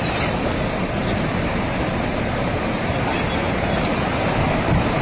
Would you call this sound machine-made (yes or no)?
yes